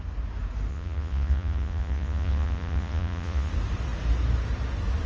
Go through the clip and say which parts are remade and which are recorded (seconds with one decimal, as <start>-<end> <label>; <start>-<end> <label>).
0.0-0.7 recorded; 0.7-3.5 remade; 3.5-5.1 recorded